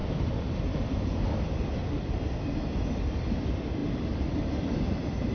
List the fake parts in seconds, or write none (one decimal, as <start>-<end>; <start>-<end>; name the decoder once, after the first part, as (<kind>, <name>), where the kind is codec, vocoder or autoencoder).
0.0-1.8 (vocoder, BigVGAN v2)